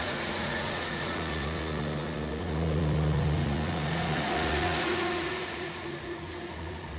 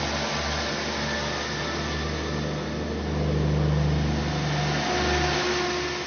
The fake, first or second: first